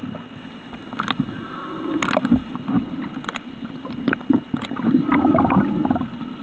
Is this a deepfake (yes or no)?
no